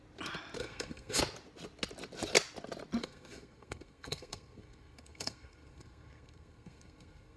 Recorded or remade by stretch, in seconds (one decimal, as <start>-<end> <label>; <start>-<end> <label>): 0.0-0.6 recorded; 0.6-1.2 remade; 1.2-3.0 recorded; 3.0-7.4 remade